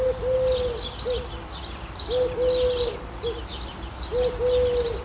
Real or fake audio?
real